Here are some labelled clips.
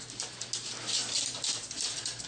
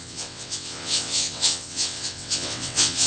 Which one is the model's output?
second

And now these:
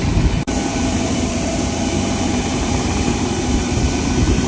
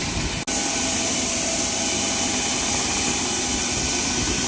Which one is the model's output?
first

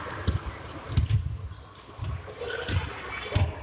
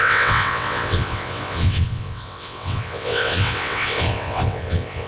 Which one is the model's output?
second